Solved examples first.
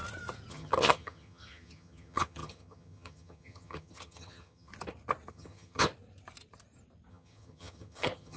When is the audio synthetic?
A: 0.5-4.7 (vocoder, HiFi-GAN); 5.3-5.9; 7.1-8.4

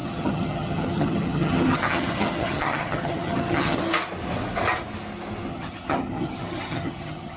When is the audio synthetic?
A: 0.0-3.8 (vocoder, HiFi-GAN); 5.5-7.4

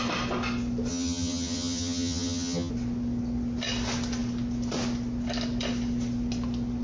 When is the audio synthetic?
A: 0.9-2.7 (vocoder, HiFi-GAN)

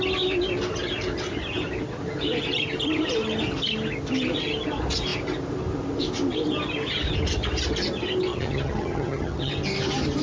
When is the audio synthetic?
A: 8.3-9.5 (vocoder, HiFi-GAN)

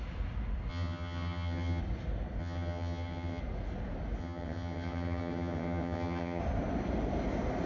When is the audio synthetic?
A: 0.7-1.8 (vocoder, HiFi-GAN); 2.4-3.4; 4.2-6.4